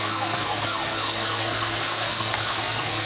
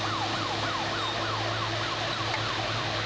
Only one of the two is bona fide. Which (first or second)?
second